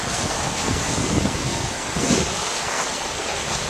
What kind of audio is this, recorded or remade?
remade